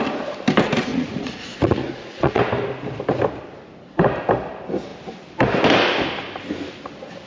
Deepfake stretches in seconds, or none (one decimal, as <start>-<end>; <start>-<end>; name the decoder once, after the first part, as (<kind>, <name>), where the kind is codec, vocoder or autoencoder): 0.9-2.4 (vocoder, Vocos)